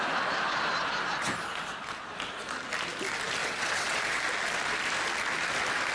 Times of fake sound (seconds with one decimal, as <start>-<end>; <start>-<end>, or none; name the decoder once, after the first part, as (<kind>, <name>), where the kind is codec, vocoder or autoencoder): 3.4-4.2 (vocoder, WaveNeXt)